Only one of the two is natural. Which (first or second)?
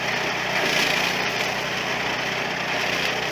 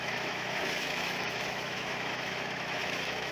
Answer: first